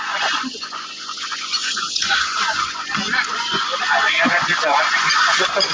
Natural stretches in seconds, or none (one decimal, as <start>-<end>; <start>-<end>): none